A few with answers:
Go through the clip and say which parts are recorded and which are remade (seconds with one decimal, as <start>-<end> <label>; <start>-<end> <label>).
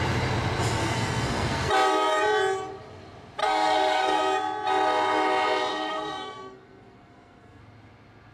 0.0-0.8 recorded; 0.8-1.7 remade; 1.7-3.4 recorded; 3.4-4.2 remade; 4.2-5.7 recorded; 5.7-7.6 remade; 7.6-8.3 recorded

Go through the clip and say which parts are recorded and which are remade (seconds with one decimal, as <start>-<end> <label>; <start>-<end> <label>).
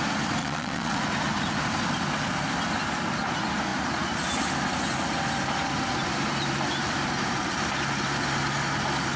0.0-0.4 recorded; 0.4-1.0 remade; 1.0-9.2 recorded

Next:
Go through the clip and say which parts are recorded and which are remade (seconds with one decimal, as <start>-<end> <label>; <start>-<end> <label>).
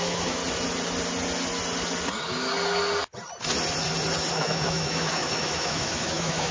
0.0-0.4 remade; 0.4-4.3 recorded; 4.3-6.5 remade